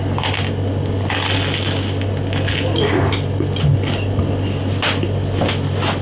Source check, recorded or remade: recorded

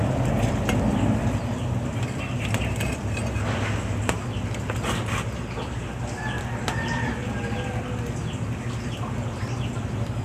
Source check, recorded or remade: recorded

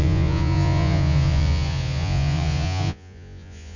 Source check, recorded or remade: remade